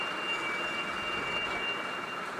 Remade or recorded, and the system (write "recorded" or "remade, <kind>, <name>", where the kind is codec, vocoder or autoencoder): recorded